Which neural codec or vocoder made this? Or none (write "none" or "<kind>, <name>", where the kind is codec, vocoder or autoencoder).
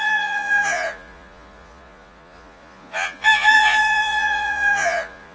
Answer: vocoder, Vocos